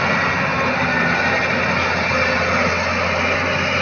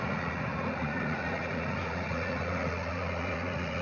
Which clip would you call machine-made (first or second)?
second